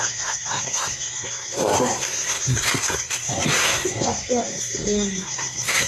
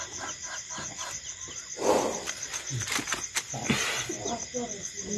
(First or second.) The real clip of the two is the second